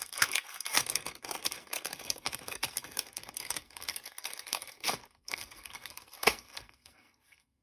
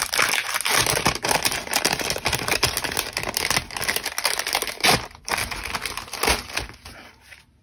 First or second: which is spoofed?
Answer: first